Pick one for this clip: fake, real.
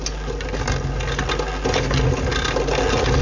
real